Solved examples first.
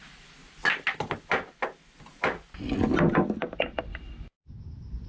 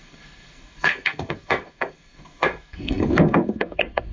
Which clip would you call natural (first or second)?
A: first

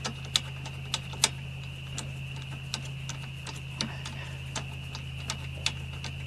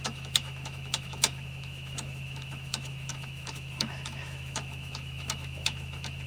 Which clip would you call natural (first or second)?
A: first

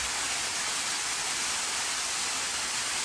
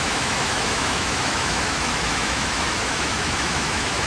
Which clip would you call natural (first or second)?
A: first